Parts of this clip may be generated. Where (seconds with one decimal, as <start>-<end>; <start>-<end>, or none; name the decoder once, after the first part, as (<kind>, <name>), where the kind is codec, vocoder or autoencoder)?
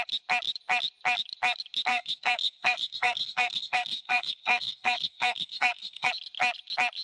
1.9-6.1 (codec, SNAC)